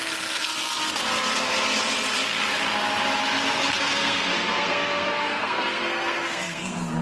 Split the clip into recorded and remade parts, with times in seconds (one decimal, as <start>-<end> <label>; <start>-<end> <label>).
0.0-0.5 remade; 0.5-3.8 recorded; 3.8-7.0 remade

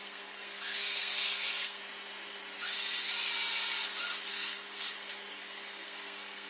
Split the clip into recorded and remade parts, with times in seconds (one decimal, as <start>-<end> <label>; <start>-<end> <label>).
0.0-1.8 remade; 1.8-4.3 recorded; 4.3-6.5 remade

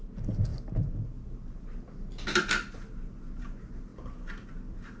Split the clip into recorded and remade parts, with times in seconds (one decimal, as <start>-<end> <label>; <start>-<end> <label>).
0.0-5.0 recorded

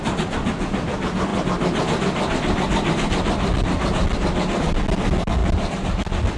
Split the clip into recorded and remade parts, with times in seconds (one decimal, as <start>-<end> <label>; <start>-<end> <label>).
0.0-6.4 recorded

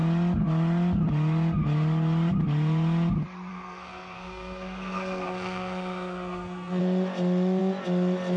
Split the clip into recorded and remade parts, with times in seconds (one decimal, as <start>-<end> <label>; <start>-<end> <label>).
0.0-3.5 recorded; 3.5-6.8 remade; 6.8-8.4 recorded

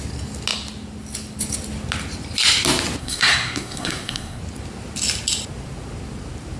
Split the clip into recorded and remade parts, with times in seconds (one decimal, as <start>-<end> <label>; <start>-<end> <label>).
0.0-3.0 recorded; 3.0-4.4 remade; 4.4-6.6 recorded

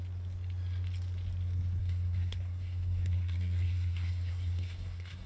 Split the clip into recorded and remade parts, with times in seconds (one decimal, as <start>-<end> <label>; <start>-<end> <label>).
0.0-1.8 recorded; 1.8-5.3 remade